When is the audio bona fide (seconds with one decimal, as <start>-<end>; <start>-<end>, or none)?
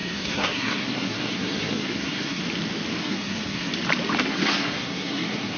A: 2.4-3.0; 3.7-4.2